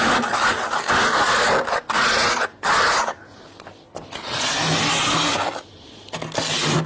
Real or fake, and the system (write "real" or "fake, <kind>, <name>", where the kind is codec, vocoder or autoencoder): real